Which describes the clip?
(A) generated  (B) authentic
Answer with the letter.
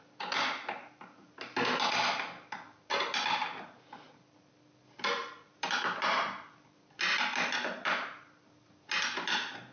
B